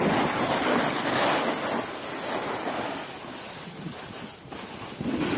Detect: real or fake real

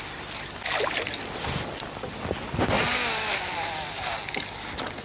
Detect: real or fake real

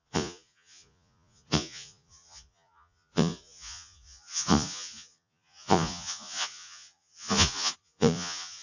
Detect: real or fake fake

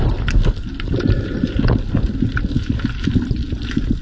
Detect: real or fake real